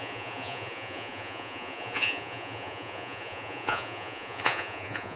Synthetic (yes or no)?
yes